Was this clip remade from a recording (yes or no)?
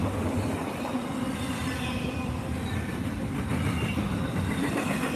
no